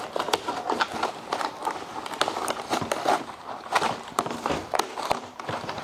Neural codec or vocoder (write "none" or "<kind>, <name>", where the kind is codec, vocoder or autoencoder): vocoder, BigVGAN v2